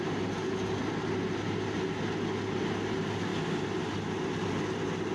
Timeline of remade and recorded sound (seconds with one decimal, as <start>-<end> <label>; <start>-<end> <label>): 0.0-5.1 recorded